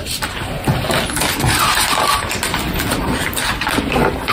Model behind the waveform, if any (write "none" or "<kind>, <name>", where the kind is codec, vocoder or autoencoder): none